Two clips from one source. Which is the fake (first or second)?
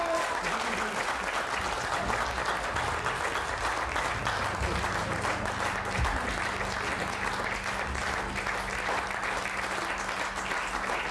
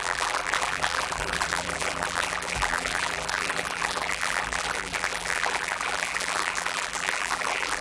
second